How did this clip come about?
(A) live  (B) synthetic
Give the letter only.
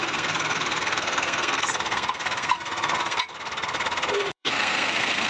B